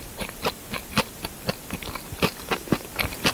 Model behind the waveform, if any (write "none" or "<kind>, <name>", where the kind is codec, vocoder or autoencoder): none